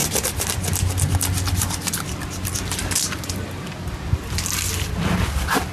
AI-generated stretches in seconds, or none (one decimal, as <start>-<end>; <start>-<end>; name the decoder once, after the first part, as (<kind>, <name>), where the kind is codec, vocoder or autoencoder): none